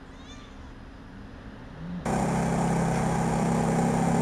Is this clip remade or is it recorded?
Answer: recorded